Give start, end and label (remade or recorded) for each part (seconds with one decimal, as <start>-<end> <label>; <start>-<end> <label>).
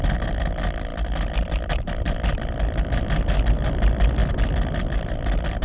0.0-5.6 recorded